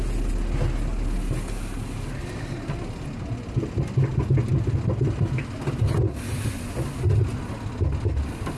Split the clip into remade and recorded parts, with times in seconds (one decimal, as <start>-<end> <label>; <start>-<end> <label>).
0.0-8.6 recorded